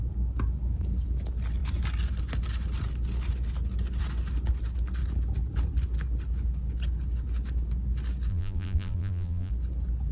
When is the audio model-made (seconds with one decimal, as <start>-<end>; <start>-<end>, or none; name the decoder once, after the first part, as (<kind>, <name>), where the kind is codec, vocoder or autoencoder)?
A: 8.3-9.5 (vocoder, BigVGAN v2)